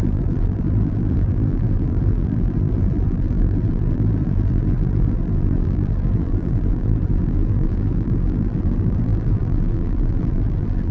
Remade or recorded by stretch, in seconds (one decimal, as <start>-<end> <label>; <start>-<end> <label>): 0.0-10.9 remade